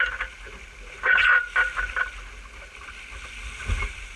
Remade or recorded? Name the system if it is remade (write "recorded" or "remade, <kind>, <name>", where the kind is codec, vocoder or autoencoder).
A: recorded